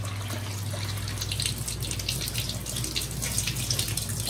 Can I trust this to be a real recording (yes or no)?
yes